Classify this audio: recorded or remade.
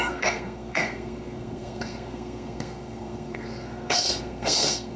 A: remade